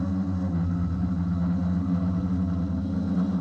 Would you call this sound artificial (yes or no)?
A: no